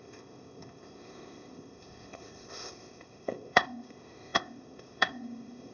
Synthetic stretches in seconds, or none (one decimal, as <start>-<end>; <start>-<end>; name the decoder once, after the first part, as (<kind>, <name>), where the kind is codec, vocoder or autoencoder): 0.0-5.7 (codec, ZipCodec)